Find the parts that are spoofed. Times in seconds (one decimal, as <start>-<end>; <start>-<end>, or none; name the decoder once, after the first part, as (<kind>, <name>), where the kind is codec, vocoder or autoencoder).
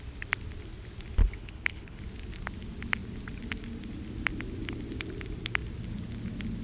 1.2-2.0 (codec, HILCodec)